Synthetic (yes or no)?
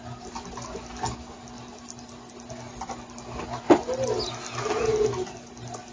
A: no